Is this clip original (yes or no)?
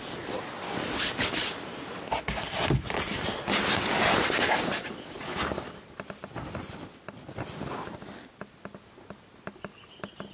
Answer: yes